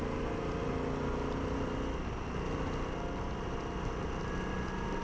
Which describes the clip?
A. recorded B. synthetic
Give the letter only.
A